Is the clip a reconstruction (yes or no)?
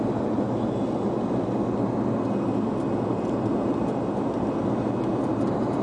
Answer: no